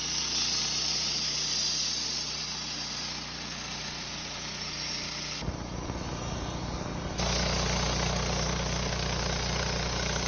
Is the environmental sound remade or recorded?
recorded